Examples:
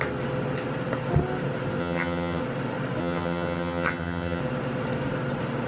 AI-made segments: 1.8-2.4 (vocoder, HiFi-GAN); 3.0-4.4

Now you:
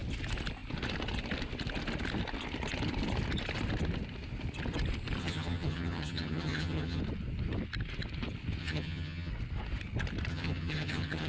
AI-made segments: 5.2-7.0 (vocoder, HiFi-GAN); 8.6-9.3; 10.3-11.3

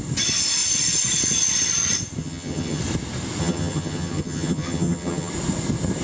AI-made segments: 2.2-2.8 (vocoder, HiFi-GAN); 3.4-5.3